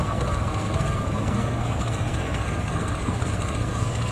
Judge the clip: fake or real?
fake